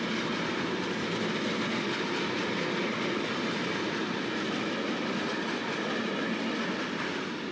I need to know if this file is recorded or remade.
recorded